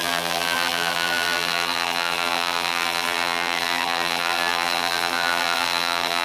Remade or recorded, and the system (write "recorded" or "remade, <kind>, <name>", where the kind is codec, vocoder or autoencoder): remade, vocoder, BigVGAN v2